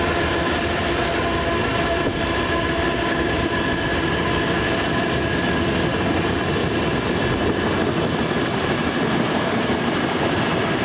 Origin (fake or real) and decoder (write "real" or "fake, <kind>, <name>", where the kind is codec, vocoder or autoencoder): real